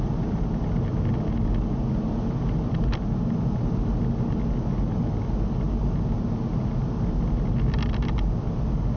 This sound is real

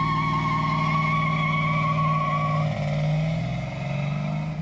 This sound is real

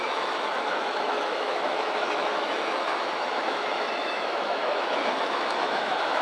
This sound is fake